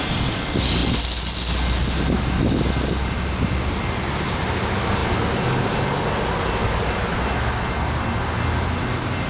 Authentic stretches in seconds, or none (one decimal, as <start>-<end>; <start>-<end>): 0.0-9.3